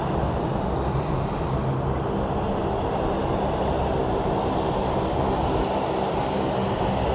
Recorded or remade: recorded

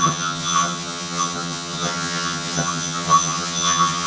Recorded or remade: remade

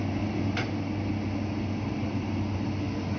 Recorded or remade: recorded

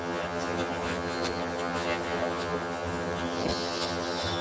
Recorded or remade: remade